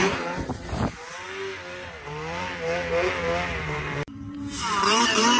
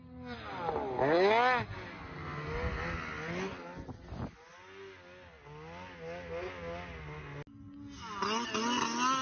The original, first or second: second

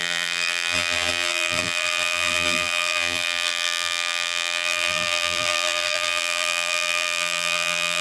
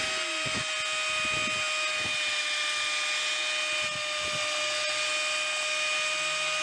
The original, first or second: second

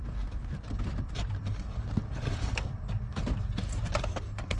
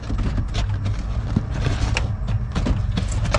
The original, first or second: second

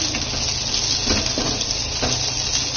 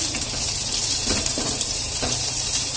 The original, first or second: first